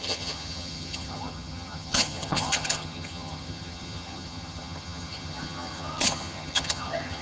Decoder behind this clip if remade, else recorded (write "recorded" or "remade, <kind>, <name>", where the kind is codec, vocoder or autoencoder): remade, vocoder, HiFi-GAN